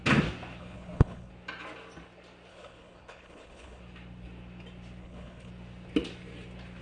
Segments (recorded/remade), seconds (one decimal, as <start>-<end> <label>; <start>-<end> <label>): 0.0-0.6 recorded; 0.6-1.3 remade; 1.3-2.5 recorded; 2.5-3.8 remade; 3.8-5.0 recorded; 5.0-5.5 remade; 5.5-6.8 recorded